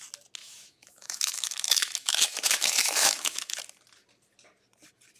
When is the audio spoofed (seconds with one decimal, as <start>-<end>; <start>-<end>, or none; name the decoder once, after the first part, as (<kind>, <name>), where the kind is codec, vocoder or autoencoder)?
0.4-3.5 (autoencoder, DAC-VAE)